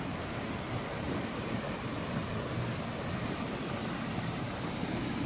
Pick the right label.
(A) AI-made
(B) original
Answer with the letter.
B